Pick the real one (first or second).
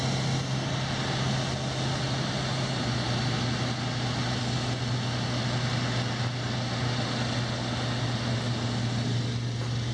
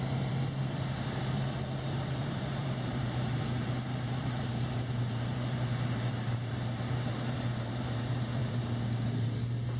first